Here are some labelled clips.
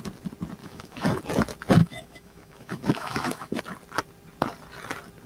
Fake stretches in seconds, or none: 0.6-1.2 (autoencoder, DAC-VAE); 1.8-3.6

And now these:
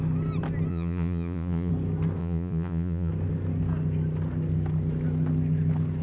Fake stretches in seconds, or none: 0.7-1.7 (vocoder, Vocos); 2.2-3.1

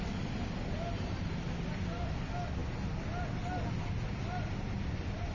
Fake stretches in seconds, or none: none

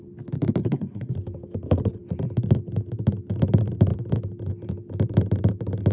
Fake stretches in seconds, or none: 0.6-1.1 (codec, SNAC)